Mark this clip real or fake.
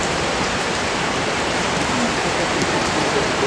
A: fake